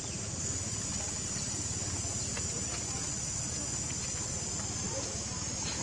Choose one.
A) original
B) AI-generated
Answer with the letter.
A